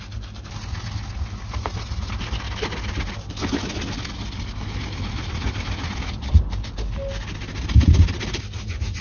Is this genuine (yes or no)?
yes